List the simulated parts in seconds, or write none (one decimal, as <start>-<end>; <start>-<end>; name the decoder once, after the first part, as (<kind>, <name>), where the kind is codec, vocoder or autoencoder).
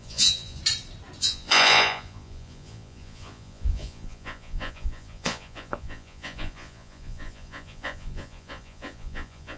0.0-0.6 (vocoder, Vocos); 1.2-9.6